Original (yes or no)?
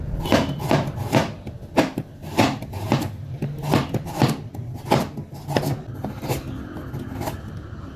yes